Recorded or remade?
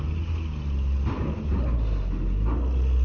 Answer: recorded